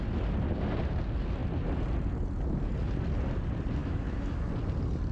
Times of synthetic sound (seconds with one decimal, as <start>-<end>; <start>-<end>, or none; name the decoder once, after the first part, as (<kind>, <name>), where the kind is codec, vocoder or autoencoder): 3.8-4.5 (autoencoder, DAC-VAE)